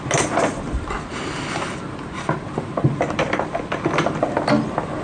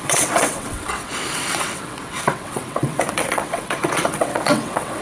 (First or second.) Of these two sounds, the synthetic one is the second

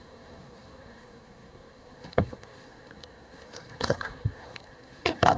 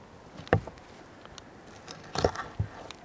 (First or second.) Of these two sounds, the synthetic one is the first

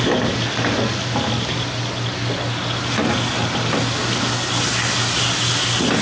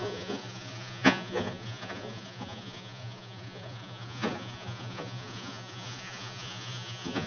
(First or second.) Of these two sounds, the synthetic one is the second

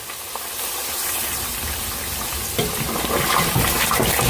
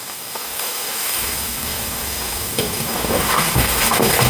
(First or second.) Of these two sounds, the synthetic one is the second